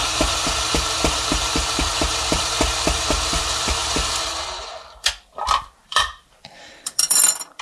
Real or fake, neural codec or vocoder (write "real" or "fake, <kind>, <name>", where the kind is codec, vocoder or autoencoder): fake, vocoder, BigVGAN v2